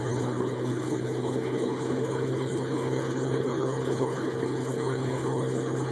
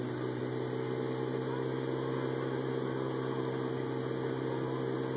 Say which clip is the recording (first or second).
second